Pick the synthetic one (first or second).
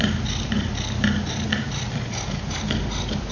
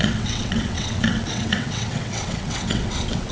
second